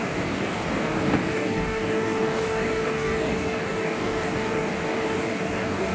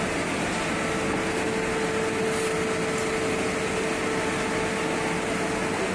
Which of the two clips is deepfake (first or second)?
first